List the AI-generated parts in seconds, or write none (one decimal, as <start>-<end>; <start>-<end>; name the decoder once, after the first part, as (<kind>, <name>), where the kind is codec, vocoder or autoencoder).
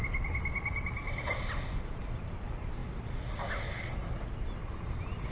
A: none